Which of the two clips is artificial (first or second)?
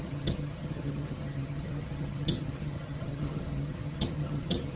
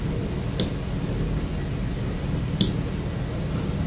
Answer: first